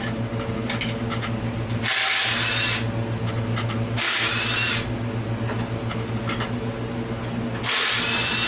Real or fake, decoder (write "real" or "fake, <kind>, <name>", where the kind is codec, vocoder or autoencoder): real